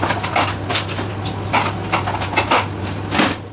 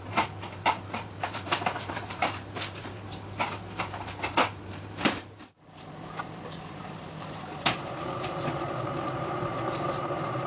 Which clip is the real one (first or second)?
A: first